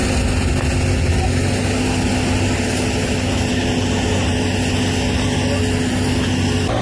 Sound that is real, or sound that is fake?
real